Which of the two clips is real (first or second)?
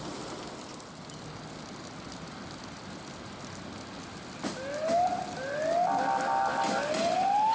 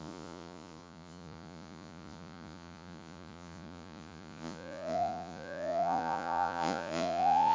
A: first